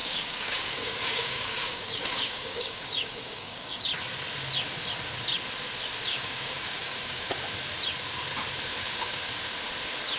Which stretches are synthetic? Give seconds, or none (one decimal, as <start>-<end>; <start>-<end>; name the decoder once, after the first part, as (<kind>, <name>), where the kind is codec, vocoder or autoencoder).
0.0-3.8 (codec, DAC); 6.1-7.3; 8.8-9.3